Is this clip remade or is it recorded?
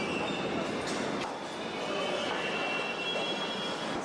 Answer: recorded